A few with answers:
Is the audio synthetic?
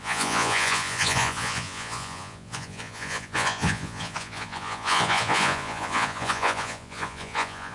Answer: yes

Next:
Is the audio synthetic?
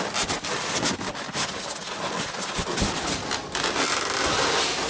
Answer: no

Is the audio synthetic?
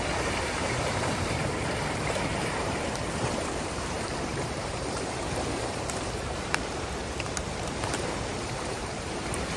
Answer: yes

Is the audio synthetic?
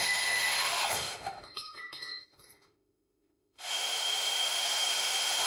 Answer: yes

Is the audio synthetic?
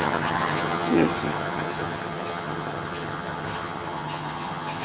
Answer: yes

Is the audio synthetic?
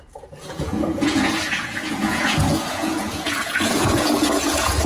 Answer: yes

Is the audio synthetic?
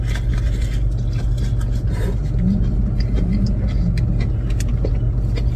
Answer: no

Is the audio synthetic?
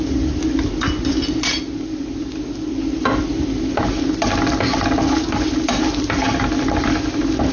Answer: no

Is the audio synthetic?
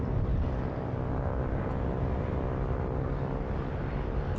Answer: no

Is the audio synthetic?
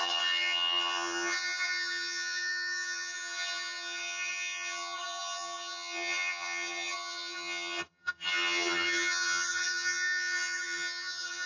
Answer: yes